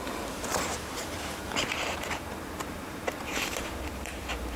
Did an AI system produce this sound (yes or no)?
yes